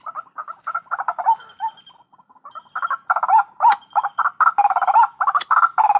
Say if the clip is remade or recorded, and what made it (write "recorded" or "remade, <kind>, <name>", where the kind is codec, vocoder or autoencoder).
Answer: recorded